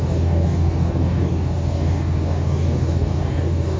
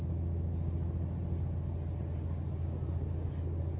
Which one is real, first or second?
second